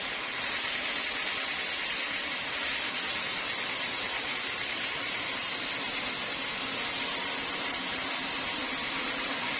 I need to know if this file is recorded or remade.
recorded